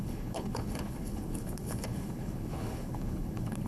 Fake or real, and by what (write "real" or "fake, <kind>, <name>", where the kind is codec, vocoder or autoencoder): fake, codec, HILCodec